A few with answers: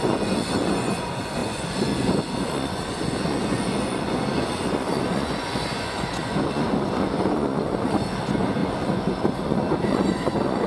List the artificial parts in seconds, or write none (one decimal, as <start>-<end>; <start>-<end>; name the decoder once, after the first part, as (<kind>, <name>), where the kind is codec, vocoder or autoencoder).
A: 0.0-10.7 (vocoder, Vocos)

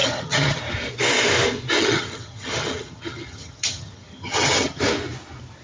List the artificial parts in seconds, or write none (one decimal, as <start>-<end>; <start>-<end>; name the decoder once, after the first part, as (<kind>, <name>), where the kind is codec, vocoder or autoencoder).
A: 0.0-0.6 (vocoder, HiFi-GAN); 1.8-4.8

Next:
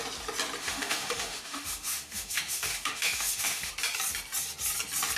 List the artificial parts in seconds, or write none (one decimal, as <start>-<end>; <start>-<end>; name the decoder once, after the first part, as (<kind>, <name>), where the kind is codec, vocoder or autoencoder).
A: 0.6-3.7 (autoencoder, DAC-VAE)

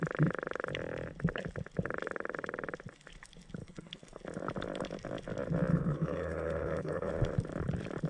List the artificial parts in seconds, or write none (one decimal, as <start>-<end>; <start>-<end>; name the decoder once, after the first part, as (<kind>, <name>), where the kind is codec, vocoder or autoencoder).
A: 3.6-4.2 (codec, SNAC); 5.7-7.1

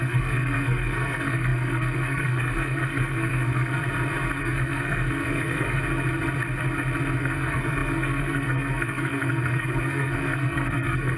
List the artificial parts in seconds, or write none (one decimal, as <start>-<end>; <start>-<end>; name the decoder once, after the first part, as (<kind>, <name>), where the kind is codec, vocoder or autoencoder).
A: 0.0-3.8 (codec, SNAC); 4.4-5.8; 7.2-11.2